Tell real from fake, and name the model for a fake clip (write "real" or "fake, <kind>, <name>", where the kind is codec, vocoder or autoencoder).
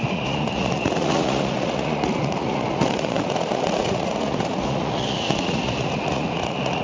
fake, vocoder, Vocos